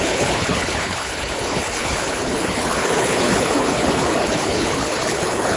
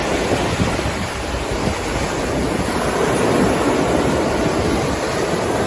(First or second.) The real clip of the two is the second